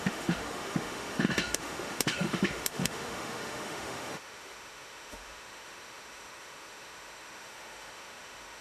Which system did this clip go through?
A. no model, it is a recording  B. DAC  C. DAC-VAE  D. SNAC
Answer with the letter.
C